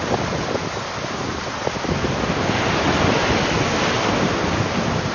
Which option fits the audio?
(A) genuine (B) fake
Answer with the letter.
A